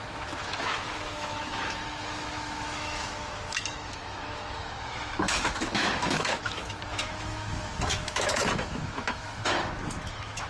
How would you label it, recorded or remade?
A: remade